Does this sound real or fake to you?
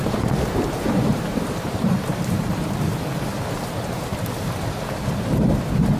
fake